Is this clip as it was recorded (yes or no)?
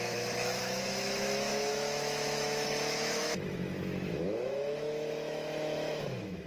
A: no